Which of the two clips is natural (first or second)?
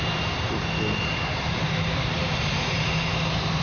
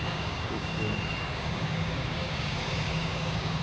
first